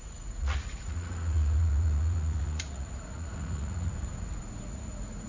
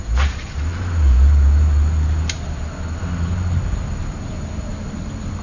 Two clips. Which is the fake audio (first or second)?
first